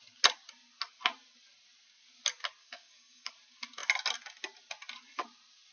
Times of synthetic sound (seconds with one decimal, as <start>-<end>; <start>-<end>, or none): 2.6-3.3